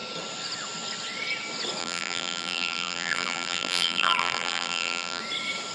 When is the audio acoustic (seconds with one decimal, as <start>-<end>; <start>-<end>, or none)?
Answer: 0.0-1.8; 5.2-5.7